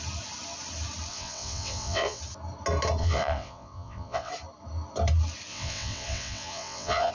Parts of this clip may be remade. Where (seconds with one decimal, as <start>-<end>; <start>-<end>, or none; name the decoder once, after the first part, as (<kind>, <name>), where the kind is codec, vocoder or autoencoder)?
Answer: 1.1-2.2 (vocoder, WaveNeXt); 3.0-4.3; 5.5-7.1